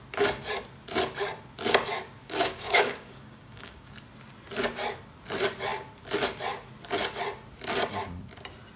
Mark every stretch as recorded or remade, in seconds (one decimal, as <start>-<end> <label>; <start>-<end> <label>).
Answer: 0.0-2.2 recorded; 2.2-3.9 remade; 3.9-8.8 recorded